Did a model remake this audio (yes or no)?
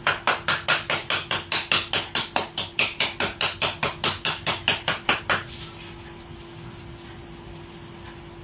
no